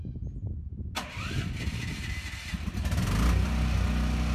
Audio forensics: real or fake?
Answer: real